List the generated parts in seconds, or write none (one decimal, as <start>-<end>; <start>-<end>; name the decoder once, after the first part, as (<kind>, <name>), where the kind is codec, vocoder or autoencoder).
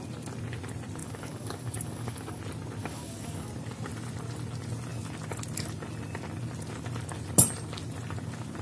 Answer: 1.0-2.4 (codec, DAC); 2.8-3.5